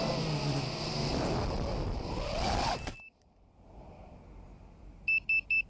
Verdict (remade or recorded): recorded